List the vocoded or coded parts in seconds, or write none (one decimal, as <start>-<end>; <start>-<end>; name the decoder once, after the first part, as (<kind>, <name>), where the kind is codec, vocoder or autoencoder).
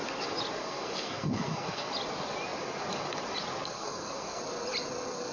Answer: 0.6-1.9 (codec, SNAC); 3.7-4.4